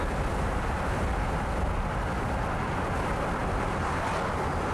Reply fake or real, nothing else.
real